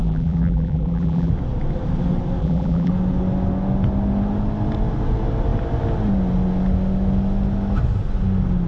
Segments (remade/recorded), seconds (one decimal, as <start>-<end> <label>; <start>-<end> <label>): 0.0-1.3 remade; 1.3-2.4 recorded; 2.4-2.9 remade; 2.9-8.7 recorded